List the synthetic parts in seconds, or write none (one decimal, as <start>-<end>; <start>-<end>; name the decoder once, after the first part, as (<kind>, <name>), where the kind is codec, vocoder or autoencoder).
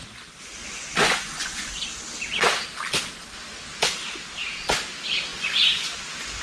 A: 0.6-1.7 (vocoder, Vocos); 5.3-5.9